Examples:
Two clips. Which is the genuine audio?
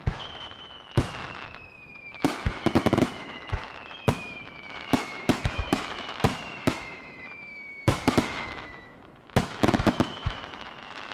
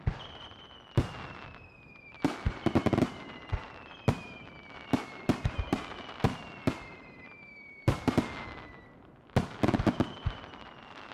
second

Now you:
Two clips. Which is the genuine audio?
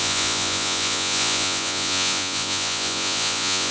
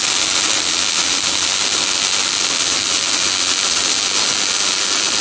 second